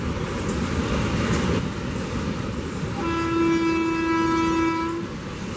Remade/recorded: recorded